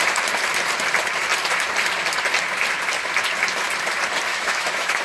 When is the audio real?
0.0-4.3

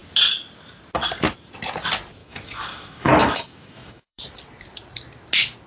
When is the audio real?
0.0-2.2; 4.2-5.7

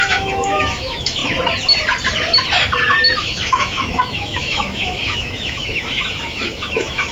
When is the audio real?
1.2-3.2